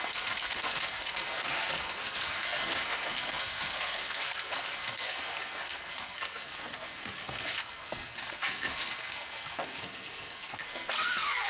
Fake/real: fake